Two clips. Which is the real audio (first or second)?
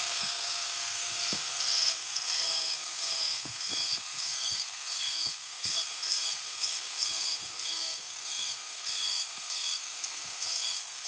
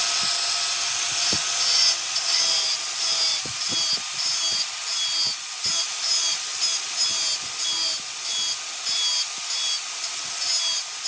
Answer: second